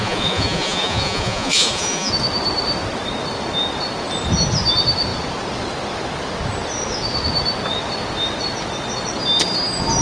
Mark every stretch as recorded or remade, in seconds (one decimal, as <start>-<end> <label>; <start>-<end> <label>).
0.0-2.1 remade; 2.1-10.0 recorded